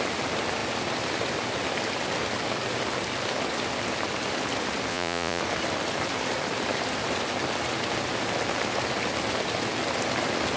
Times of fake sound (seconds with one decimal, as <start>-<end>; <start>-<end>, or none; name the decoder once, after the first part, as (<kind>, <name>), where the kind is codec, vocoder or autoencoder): 4.9-5.4 (vocoder, Vocos)